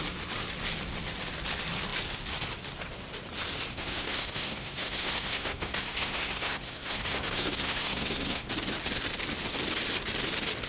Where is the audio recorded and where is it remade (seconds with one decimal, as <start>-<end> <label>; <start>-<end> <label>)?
0.0-3.7 recorded; 3.7-8.5 remade; 8.5-10.7 recorded